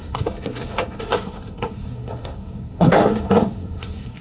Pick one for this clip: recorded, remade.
remade